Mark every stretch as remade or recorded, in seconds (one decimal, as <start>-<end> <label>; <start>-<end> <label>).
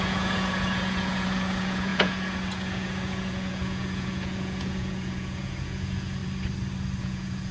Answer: 0.0-6.2 remade; 6.2-7.0 recorded; 7.0-7.5 remade